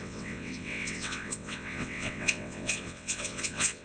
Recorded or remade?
remade